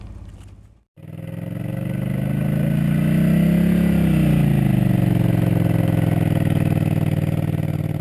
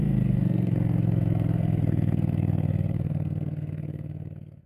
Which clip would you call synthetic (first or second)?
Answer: second